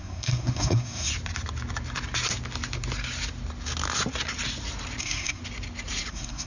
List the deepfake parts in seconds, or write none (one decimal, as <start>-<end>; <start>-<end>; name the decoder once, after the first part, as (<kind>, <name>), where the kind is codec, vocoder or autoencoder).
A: 0.0-1.1 (codec, SNAC); 5.0-5.4; 6.1-6.5